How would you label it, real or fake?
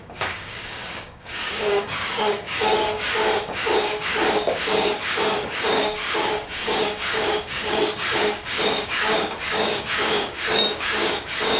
fake